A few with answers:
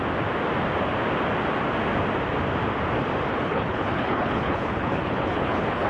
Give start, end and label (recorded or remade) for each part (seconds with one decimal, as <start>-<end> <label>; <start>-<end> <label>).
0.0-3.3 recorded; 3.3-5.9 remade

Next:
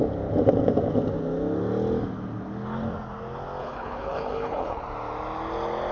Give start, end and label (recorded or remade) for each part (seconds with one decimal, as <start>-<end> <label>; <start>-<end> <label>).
0.0-3.6 recorded; 3.6-4.8 remade; 4.8-5.9 recorded

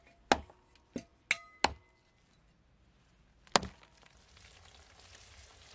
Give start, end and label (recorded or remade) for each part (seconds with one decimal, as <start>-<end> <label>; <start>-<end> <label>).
0.0-5.7 recorded